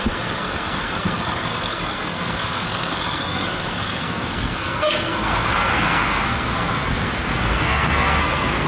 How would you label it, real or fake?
fake